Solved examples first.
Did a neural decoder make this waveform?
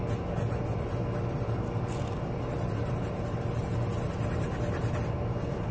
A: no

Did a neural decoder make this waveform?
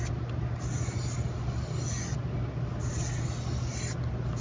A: no